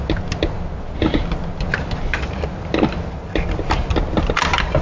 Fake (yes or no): no